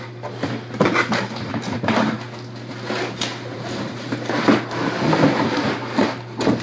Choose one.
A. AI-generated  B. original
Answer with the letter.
B